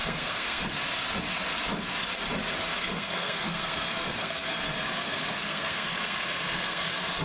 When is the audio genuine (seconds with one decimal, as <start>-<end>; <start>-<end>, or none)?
0.7-2.7; 4.5-4.9; 6.8-7.2